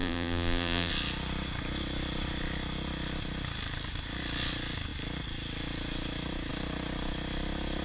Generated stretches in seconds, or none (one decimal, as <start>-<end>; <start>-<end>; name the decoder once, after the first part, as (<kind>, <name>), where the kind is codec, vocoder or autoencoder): 0.0-0.9 (vocoder, BigVGAN v2)